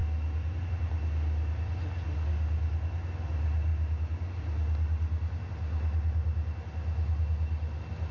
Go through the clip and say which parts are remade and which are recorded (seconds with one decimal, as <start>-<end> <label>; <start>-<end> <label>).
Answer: 0.0-8.1 recorded